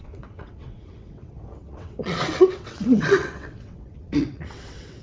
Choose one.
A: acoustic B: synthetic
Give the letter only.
B